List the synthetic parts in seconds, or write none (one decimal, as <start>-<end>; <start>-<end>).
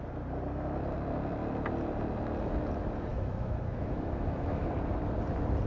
3.1-4.7